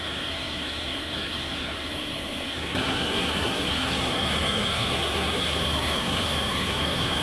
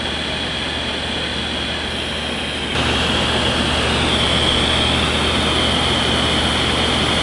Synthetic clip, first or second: first